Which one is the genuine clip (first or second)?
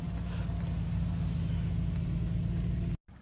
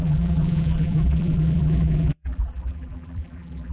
first